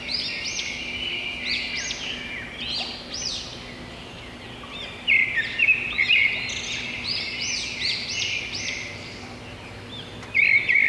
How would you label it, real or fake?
real